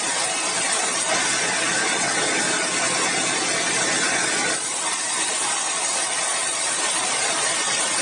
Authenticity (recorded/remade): recorded